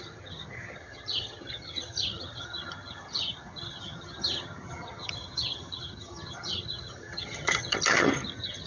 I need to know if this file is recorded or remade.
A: remade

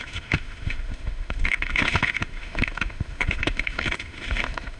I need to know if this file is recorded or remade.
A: remade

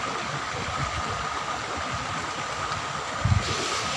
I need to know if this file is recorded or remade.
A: recorded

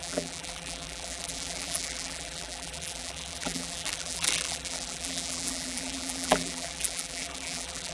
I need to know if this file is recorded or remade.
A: remade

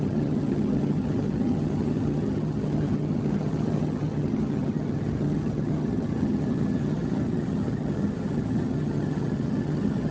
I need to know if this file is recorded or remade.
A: remade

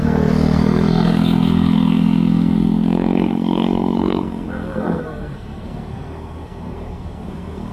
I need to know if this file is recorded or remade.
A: remade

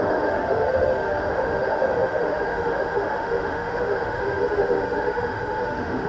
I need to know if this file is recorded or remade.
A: remade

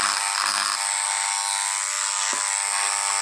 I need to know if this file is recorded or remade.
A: recorded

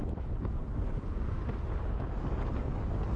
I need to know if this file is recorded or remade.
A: remade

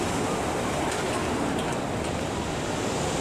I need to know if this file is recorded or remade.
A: recorded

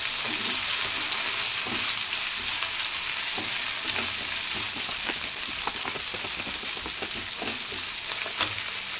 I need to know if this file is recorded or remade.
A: recorded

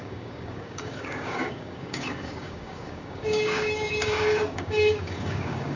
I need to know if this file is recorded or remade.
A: remade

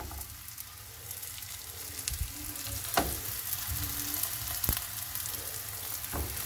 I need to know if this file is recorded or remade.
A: recorded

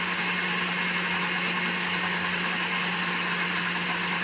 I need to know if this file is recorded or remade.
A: recorded